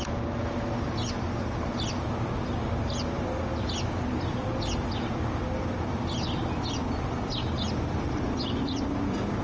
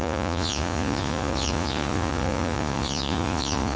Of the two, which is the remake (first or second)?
second